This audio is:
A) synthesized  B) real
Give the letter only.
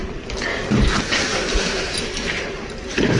B